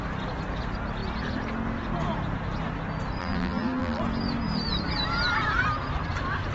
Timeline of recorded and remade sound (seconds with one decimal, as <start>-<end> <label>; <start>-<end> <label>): 0.0-3.2 recorded; 3.2-4.0 remade; 4.0-6.5 recorded